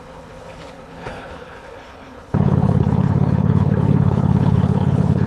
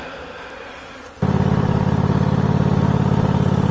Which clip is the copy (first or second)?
first